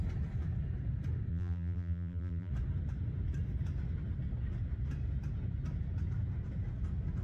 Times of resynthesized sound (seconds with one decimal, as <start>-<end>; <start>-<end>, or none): 1.3-2.5